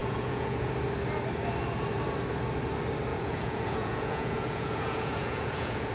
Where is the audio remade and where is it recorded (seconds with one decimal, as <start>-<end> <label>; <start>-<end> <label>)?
0.0-0.7 remade; 0.7-3.1 recorded; 3.1-5.9 remade

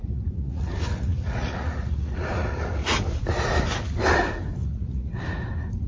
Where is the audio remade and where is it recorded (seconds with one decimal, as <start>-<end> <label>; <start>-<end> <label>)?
0.0-3.0 remade; 3.0-4.6 recorded; 4.6-5.2 remade; 5.2-5.9 recorded

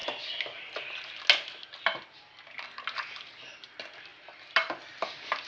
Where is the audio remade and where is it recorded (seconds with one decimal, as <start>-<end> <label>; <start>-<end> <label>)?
0.0-5.5 recorded